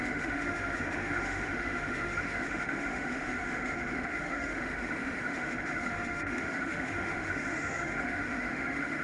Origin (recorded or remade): remade